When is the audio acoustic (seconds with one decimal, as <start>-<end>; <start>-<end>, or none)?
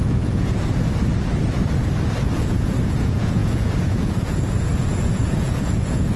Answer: 0.6-2.4